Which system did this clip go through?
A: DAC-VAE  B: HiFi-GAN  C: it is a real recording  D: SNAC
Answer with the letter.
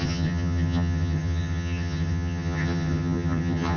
B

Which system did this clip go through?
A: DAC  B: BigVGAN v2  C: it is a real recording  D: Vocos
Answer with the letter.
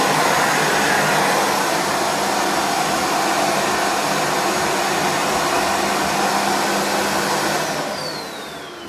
C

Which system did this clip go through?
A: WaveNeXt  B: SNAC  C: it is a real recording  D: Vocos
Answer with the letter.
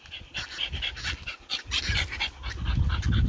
C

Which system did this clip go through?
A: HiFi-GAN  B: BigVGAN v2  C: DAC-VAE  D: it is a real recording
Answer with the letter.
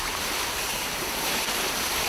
B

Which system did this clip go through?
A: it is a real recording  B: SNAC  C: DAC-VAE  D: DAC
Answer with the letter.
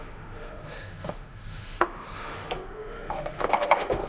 C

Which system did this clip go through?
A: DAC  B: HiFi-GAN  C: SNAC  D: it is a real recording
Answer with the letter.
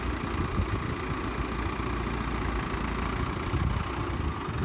D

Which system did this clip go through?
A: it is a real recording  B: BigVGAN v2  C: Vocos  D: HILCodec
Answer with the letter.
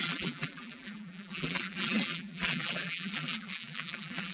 B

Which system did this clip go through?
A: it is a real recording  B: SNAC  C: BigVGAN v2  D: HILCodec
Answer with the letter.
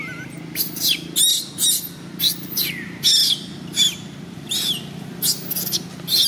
A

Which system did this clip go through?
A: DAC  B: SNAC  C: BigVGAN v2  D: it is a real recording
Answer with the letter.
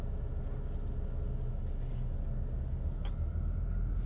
D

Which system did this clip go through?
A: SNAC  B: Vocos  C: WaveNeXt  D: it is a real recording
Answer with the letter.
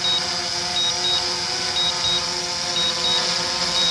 D